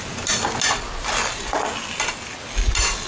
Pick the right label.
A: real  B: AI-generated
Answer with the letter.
A